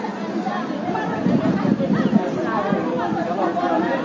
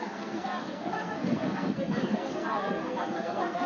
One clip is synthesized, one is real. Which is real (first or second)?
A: first